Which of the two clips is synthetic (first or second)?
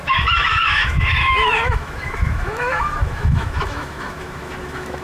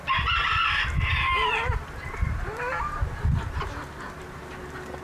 first